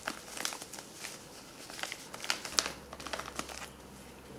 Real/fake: real